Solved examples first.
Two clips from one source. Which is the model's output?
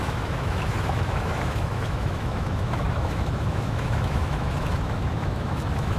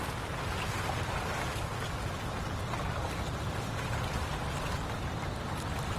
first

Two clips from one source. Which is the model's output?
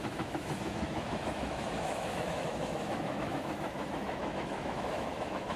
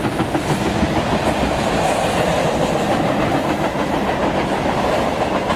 first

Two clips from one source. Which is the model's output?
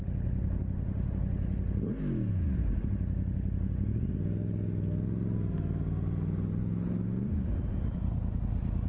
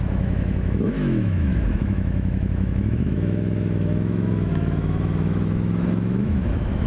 second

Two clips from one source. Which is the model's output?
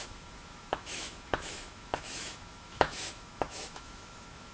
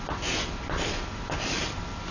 first